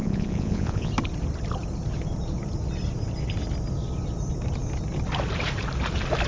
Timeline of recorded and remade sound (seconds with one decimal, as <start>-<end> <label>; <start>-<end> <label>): 0.0-0.9 remade; 0.9-6.3 recorded